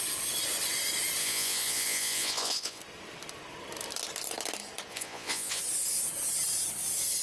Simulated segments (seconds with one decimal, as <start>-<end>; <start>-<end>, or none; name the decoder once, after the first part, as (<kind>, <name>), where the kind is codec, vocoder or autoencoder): 1.2-2.8 (vocoder, Vocos); 4.9-5.6